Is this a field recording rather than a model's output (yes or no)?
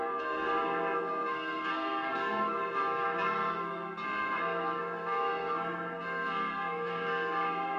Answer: no